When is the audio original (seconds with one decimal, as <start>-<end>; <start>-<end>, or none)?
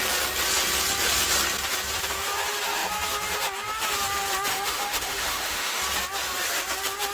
0.0-4.5; 5.8-7.1